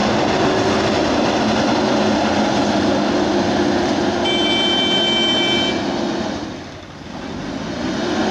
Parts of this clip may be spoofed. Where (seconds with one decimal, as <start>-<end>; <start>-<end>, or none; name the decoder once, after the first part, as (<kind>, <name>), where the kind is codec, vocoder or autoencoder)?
none